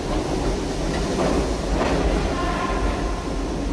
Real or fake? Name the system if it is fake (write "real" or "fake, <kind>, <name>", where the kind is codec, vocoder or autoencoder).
real